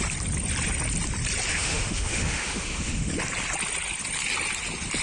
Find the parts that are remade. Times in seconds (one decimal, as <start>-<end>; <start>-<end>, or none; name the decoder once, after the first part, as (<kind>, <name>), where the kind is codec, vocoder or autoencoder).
1.5-3.1 (autoencoder, DAC-VAE)